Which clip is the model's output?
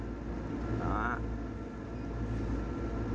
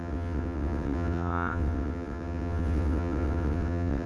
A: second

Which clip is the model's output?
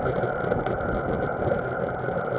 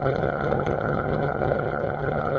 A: second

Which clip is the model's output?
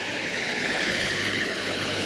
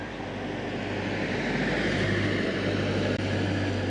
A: first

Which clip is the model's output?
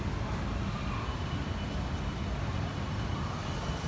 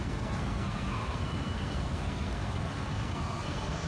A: second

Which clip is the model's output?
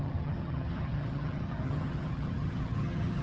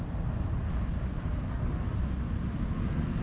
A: first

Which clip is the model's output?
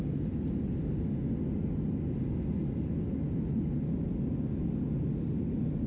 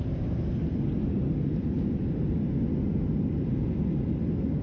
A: second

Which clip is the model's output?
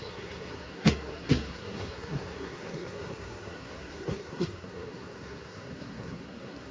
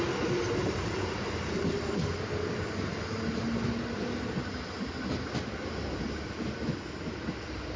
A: first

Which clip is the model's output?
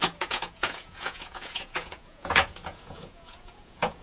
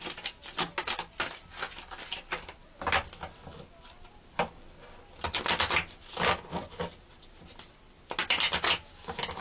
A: first